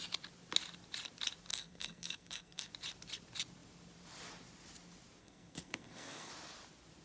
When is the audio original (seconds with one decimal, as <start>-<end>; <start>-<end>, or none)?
0.0-1.5; 2.7-5.2; 6.3-7.0

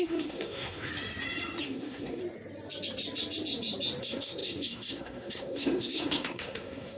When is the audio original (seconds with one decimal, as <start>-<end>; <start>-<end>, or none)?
0.9-1.6; 2.2-4.0

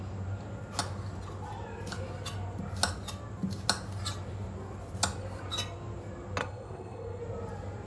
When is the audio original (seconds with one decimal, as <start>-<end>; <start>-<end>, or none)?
0.0-6.4; 7.2-7.9

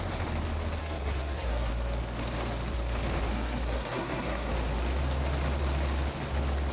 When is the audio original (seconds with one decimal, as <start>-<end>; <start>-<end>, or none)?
0.0-0.8; 1.7-3.3; 4.5-6.7

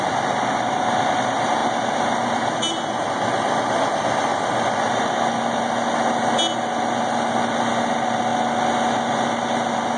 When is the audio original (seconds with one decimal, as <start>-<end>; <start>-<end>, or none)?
0.0-10.0

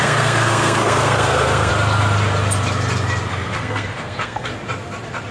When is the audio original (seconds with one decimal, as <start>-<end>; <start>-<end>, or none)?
1.7-3.3; 4.5-5.3

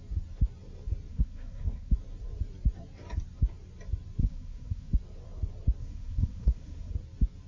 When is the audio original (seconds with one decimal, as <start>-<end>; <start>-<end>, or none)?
0.0-1.1; 1.9-4.2; 4.9-5.8; 6.9-7.5